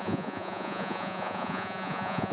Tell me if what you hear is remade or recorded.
remade